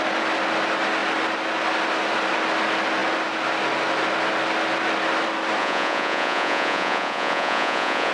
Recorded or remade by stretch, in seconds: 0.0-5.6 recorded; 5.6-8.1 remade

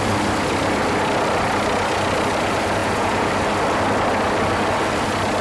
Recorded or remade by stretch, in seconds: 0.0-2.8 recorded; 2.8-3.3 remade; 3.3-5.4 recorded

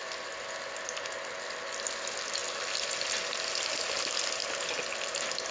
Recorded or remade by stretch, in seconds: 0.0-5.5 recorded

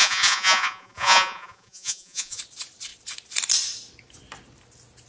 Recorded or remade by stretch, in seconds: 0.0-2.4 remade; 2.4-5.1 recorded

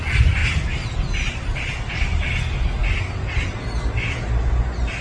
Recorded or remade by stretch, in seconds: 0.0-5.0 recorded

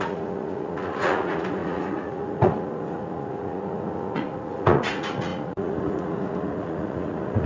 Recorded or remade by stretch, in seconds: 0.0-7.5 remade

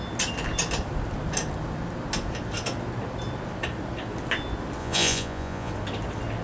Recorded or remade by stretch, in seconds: 0.0-4.8 recorded; 4.8-5.7 remade; 5.7-6.4 recorded